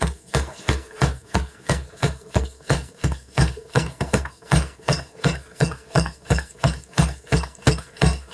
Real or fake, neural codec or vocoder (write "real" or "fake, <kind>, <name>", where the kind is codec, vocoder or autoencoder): fake, codec, SNAC